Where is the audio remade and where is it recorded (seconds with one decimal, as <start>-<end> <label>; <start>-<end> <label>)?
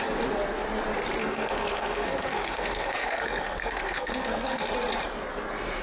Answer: 0.0-1.2 recorded; 1.2-4.7 remade; 4.7-5.8 recorded